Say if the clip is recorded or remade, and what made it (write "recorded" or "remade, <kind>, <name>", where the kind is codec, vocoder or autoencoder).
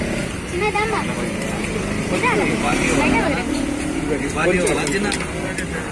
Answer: recorded